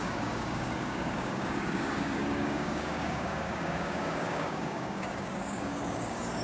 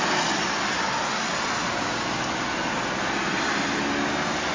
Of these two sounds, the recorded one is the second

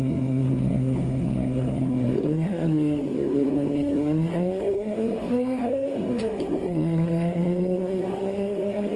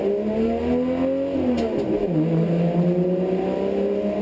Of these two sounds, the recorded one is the second